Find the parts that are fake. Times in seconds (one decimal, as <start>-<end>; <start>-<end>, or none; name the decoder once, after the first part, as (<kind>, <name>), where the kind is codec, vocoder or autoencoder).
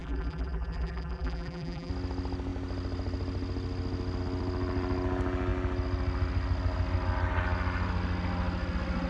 0.0-1.9 (vocoder, BigVGAN v2)